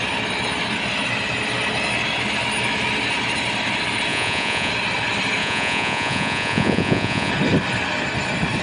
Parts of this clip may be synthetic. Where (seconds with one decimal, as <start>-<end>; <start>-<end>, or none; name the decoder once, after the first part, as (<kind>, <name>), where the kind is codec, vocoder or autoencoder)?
4.1-4.7 (vocoder, Vocos); 5.4-7.3